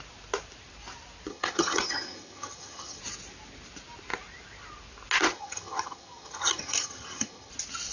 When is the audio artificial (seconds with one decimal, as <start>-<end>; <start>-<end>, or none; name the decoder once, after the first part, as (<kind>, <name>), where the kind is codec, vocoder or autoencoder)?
1.3-3.0 (vocoder, HiFi-GAN); 5.3-7.5